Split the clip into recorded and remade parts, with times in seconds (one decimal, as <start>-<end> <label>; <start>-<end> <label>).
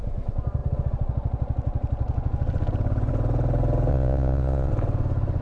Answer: 0.0-3.9 recorded; 3.9-4.7 remade; 4.7-5.4 recorded